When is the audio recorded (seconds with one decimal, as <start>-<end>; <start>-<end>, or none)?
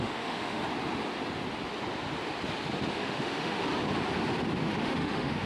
0.6-2.9; 3.7-4.6